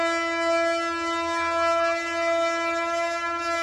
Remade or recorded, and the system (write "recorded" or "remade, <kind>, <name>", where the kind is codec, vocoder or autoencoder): recorded